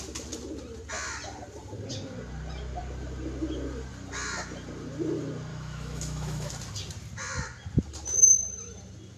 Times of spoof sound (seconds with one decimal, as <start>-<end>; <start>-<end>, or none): 5.5-6.5